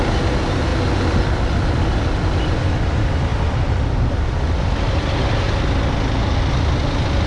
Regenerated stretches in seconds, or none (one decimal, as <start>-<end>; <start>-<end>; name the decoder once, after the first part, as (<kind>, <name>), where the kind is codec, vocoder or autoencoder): none